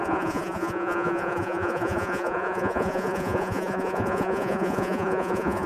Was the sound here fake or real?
fake